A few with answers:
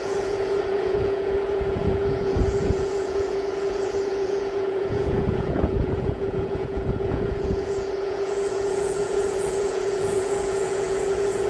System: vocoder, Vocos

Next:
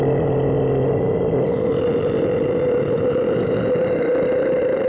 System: none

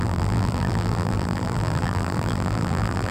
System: vocoder, BigVGAN v2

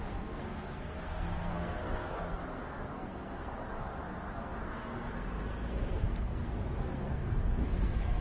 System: codec, SNAC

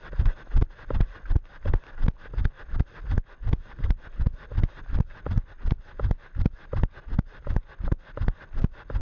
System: none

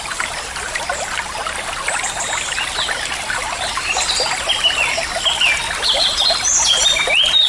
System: none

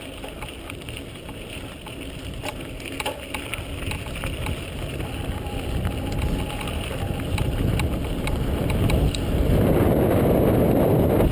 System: none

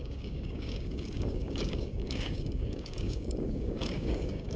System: codec, DAC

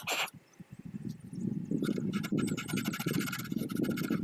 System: none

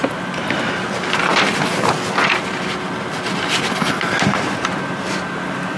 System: none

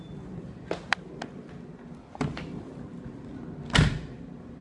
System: none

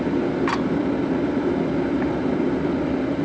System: none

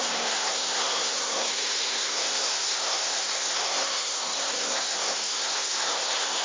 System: codec, SNAC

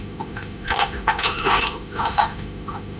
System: autoencoder, DAC-VAE